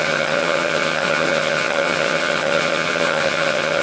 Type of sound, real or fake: fake